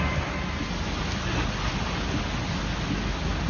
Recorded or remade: recorded